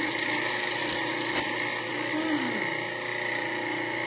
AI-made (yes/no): no